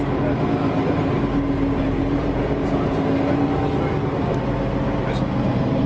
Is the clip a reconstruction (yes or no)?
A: no